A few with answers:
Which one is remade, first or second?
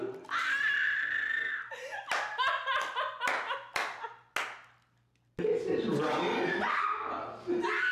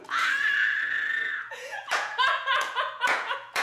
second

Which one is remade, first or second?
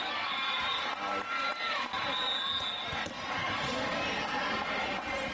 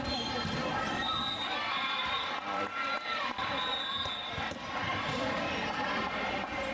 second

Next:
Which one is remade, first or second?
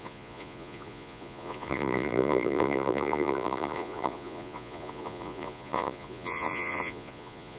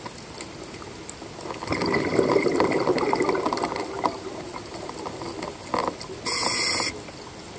first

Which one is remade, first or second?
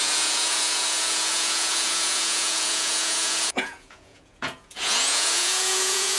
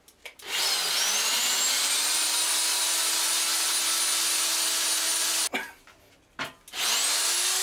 first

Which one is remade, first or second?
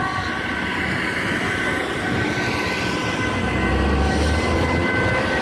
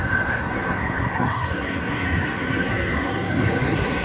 second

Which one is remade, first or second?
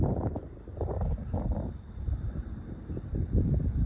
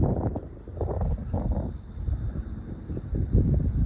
first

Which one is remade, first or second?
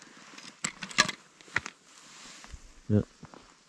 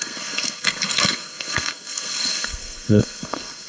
second